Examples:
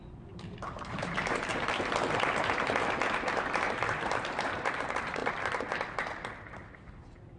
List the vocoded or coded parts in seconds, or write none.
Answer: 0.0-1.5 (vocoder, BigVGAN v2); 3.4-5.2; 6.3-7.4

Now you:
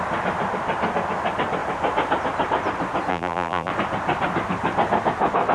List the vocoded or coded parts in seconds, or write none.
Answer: 3.1-3.7 (vocoder, BigVGAN v2)